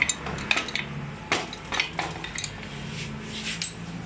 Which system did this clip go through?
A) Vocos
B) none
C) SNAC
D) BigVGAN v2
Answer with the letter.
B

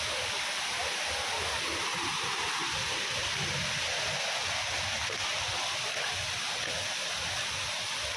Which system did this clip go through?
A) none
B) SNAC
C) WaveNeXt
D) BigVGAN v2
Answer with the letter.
A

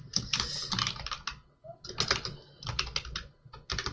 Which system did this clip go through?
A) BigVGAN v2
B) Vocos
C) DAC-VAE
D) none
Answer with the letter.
D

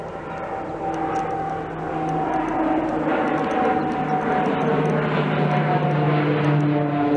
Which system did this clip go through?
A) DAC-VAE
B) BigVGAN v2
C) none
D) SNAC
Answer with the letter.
C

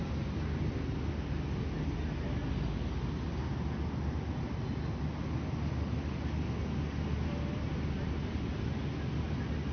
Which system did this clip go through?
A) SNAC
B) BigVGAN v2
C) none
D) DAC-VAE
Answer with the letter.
C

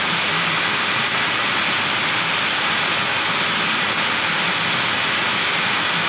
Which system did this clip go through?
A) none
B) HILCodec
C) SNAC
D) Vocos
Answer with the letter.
A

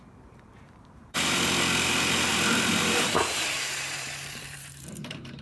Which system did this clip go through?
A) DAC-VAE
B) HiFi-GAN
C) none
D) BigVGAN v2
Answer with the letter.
D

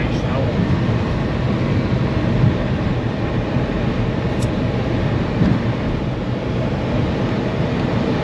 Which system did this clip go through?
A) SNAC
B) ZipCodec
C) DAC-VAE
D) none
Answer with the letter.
D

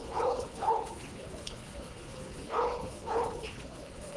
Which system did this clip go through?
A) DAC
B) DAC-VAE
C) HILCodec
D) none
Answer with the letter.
C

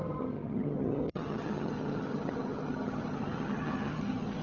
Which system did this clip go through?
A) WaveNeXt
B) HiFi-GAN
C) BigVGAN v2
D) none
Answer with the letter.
B